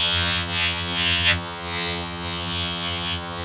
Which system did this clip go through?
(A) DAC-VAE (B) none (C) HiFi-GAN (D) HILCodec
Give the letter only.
C